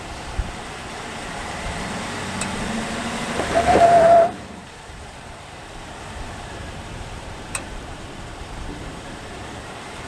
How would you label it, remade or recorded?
remade